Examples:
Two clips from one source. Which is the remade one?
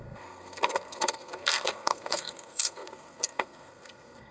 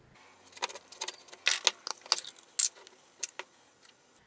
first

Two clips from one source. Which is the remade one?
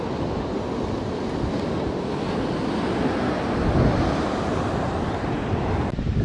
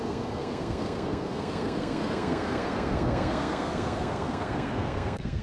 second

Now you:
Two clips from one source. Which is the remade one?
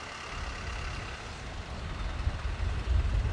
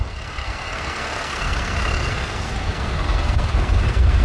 second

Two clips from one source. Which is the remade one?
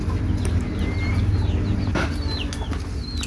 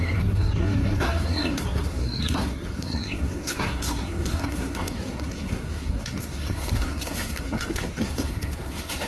second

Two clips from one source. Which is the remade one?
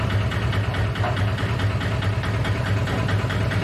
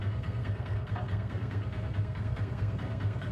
second